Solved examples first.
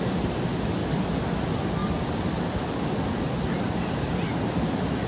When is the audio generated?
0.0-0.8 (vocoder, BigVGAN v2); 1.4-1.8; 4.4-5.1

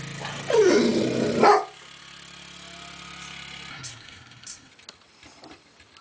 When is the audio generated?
3.7-4.7 (codec, SNAC)